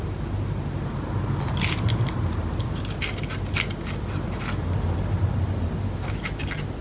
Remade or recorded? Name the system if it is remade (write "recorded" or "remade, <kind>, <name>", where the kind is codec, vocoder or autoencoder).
recorded